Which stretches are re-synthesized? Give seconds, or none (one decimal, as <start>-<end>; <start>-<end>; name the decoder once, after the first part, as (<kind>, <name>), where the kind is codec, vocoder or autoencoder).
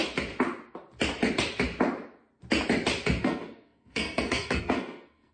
3.2-5.3 (codec, SNAC)